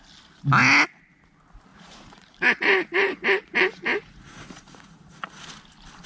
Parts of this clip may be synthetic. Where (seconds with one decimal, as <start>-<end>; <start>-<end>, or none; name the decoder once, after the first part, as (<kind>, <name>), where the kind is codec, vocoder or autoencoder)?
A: 1.7-5.4 (vocoder, Vocos)